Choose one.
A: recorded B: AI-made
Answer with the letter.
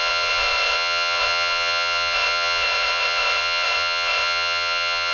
B